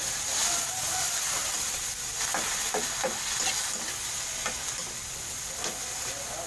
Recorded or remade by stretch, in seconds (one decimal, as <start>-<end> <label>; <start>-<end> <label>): 0.0-6.5 recorded